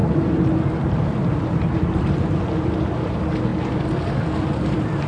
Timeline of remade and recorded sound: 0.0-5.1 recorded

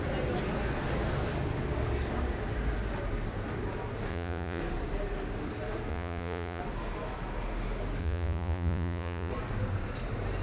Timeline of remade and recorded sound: 0.0-4.1 recorded; 4.1-4.6 remade; 4.6-5.9 recorded; 5.9-6.6 remade; 6.6-8.0 recorded; 8.0-9.3 remade; 9.3-10.4 recorded

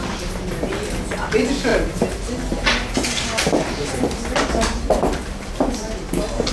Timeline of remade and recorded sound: 0.0-6.5 recorded

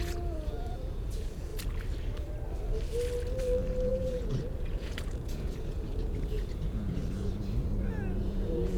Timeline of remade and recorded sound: 0.0-1.5 remade; 1.5-3.7 recorded; 3.7-7.0 remade; 7.0-7.9 recorded; 7.9-8.8 remade